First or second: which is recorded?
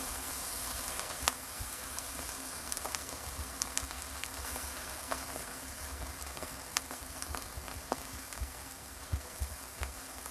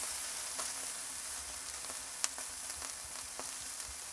second